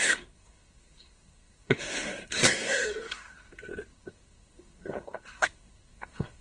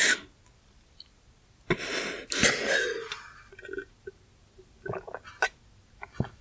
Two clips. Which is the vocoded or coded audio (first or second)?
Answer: first